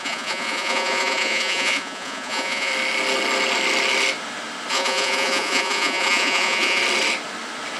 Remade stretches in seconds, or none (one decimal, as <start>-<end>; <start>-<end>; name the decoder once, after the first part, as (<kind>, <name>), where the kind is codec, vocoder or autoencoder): 0.0-2.7 (vocoder, Vocos); 4.7-6.8